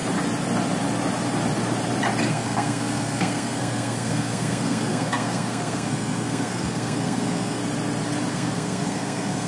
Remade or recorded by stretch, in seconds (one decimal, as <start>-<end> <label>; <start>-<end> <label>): 0.0-2.3 recorded; 2.3-7.6 remade; 7.6-8.3 recorded; 8.3-9.5 remade